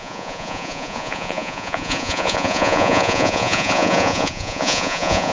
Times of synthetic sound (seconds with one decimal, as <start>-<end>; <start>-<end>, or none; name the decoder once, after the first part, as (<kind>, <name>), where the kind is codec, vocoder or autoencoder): 0.0-5.3 (vocoder, Vocos)